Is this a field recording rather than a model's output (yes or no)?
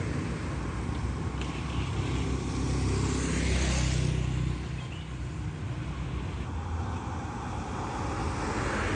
yes